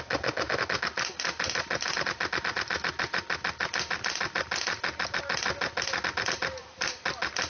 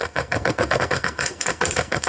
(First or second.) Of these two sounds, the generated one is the second